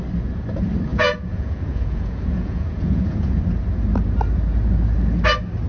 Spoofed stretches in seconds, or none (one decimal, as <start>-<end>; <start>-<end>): 0.9-3.4